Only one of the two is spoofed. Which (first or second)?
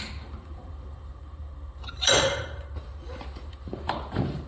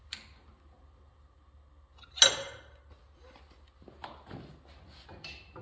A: first